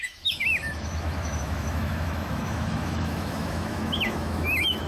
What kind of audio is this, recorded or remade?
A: remade